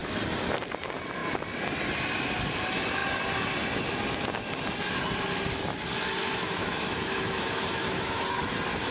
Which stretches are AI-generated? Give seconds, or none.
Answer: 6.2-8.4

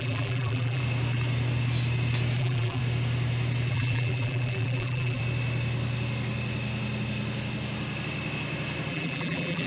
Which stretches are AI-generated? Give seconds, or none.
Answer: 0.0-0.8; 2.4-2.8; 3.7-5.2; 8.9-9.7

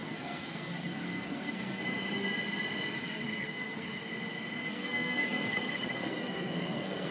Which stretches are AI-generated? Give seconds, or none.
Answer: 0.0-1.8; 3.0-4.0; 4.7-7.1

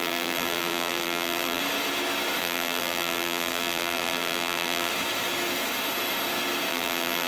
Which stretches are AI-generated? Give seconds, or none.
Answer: 0.0-1.6; 2.4-4.9; 6.7-7.3

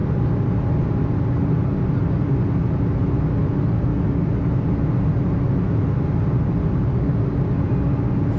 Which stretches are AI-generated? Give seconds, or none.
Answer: none

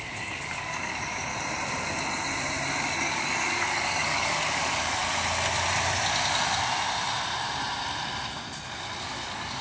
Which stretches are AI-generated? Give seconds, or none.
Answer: 0.0-1.3; 2.8-5.0; 9.0-9.6

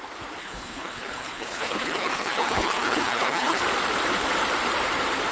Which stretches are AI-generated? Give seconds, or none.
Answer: 0.4-3.6